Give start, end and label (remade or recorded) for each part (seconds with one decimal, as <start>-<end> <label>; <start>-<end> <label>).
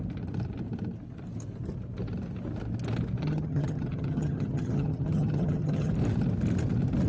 0.0-3.2 recorded; 3.2-5.9 remade; 5.9-7.1 recorded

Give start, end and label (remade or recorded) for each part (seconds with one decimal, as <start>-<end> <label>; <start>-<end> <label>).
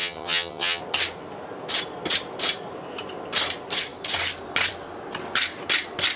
0.0-0.8 remade; 0.8-6.2 recorded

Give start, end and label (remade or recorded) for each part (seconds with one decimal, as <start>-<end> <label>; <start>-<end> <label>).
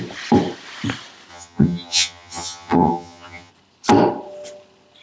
0.0-1.3 recorded; 1.3-3.5 remade; 3.5-5.0 recorded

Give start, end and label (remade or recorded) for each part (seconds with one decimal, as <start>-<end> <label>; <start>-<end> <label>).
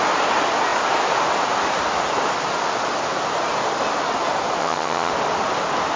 0.0-4.6 recorded; 4.6-5.1 remade; 5.1-6.0 recorded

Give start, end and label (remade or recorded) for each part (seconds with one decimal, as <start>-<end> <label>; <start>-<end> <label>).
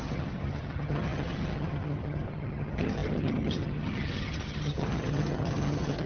0.0-6.1 remade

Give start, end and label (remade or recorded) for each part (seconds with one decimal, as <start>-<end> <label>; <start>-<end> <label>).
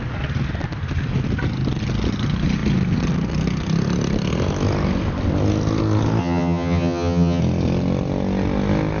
0.0-6.2 recorded; 6.2-7.4 remade; 7.4-9.0 recorded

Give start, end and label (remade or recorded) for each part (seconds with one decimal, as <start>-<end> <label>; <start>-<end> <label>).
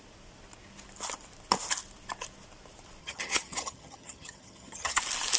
0.0-3.0 recorded; 3.0-5.0 remade; 5.0-5.4 recorded